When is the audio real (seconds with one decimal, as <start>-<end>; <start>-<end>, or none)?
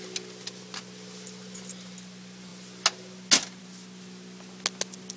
0.0-5.2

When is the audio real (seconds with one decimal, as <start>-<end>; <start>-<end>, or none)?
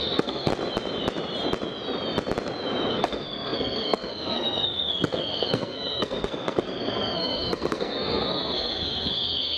0.5-2.9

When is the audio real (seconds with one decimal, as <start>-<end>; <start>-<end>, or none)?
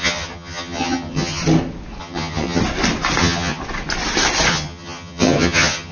1.4-2.0; 2.6-3.2; 3.6-4.5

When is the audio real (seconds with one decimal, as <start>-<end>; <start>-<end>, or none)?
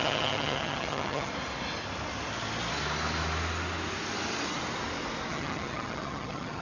1.3-5.3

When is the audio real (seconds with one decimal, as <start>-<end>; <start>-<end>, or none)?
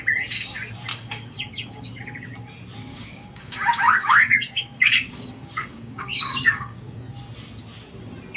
0.0-0.9; 2.0-2.9; 7.1-8.4